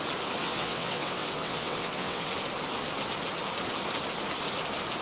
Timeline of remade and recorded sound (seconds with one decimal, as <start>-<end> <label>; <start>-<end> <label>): 0.0-0.4 recorded; 0.4-2.3 remade; 2.3-5.0 recorded